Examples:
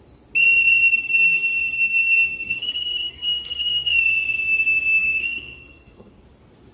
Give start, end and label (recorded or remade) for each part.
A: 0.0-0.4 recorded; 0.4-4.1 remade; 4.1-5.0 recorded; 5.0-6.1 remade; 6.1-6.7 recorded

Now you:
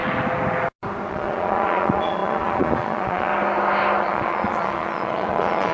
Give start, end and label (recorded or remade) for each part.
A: 0.0-1.1 recorded; 1.1-3.3 remade; 3.3-4.0 recorded; 4.0-5.7 remade